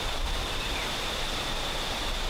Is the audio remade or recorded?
recorded